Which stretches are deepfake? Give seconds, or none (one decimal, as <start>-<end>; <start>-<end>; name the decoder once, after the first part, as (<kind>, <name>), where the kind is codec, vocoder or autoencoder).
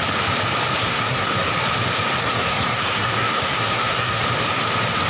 0.8-1.5 (codec, SNAC); 2.2-4.2